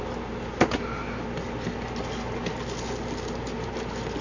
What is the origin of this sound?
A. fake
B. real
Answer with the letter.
B